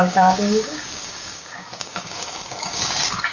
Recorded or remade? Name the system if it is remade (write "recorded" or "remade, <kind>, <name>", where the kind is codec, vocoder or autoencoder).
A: remade, codec, DAC